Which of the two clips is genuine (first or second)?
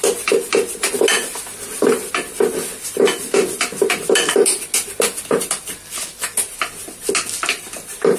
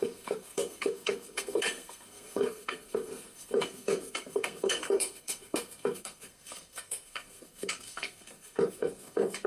first